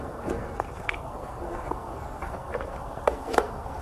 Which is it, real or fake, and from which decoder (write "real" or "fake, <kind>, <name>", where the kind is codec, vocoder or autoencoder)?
fake, codec, SNAC